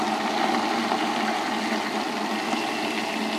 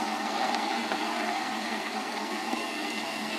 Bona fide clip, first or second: first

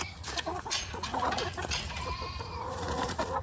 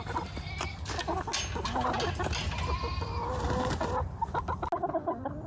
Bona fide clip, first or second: second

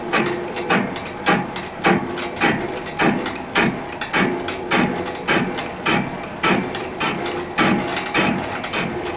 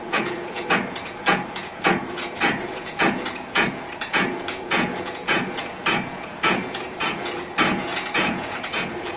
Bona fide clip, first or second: first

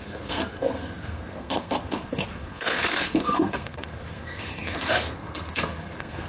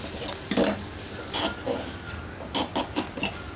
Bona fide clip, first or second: second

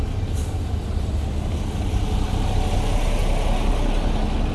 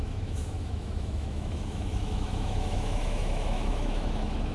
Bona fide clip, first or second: first